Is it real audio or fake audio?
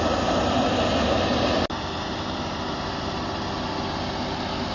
real